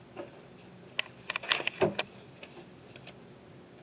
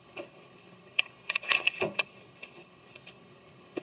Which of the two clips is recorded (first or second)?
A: first